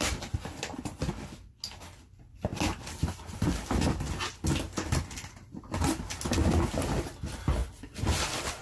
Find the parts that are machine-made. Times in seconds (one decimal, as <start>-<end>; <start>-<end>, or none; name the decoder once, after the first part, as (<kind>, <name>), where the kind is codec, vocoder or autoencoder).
none